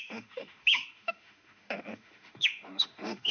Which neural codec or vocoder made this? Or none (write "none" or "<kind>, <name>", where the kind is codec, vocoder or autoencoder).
autoencoder, DAC-VAE